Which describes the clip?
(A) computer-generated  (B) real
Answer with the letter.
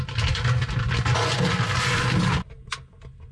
B